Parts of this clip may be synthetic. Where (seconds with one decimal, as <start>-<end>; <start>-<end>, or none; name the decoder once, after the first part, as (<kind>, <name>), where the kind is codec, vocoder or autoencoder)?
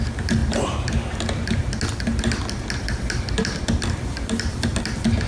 none